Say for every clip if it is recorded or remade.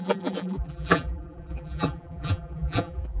remade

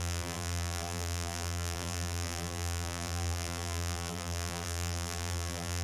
remade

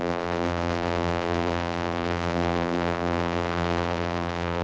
remade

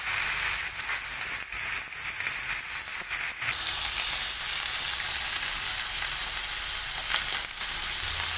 recorded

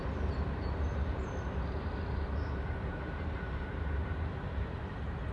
remade